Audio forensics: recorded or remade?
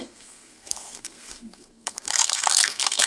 remade